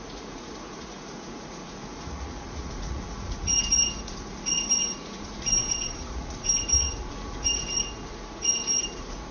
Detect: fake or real fake